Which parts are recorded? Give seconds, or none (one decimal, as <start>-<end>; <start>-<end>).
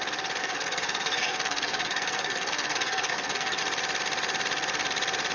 0.0-0.4; 3.6-5.3